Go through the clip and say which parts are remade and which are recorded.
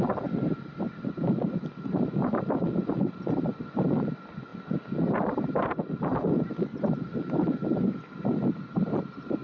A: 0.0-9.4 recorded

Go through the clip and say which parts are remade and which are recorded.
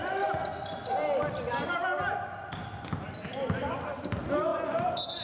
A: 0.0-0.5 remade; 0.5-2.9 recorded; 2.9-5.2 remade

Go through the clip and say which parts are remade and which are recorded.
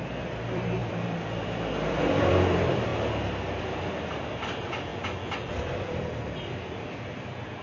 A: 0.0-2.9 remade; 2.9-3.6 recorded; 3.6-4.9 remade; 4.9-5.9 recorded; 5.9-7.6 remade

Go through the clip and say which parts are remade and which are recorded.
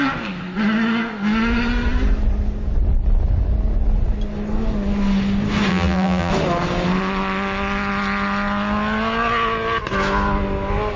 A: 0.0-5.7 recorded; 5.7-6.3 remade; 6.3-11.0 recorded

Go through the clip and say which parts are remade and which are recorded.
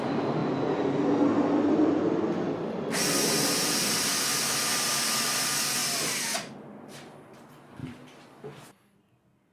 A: 0.0-4.7 recorded; 4.7-5.3 remade; 5.3-5.8 recorded; 5.8-6.5 remade; 6.5-7.8 recorded; 7.8-8.6 remade; 8.6-9.5 recorded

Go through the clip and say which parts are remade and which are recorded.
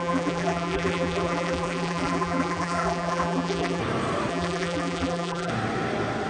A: 0.0-3.8 remade; 3.8-4.3 recorded; 4.3-5.5 remade; 5.5-6.3 recorded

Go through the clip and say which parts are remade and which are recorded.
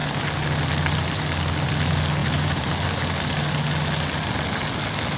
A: 0.0-2.2 recorded; 2.2-2.7 remade; 2.7-5.2 recorded